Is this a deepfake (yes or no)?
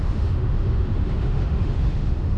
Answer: yes